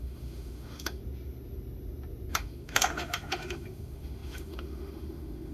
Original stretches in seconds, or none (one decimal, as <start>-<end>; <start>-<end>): 1.0-2.3